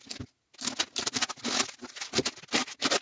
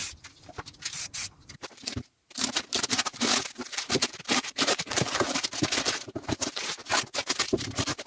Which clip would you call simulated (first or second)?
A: second